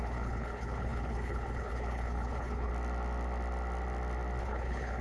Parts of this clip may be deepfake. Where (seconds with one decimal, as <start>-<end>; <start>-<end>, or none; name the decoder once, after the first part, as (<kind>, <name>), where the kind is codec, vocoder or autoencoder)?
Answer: 0.0-2.7 (codec, HILCodec); 4.4-5.0